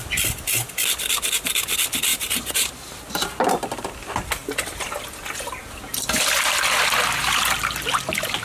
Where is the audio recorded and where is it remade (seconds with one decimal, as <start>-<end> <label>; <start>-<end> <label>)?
0.0-2.1 recorded; 2.1-2.7 remade; 2.7-8.4 recorded